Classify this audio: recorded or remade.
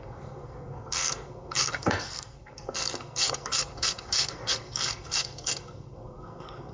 remade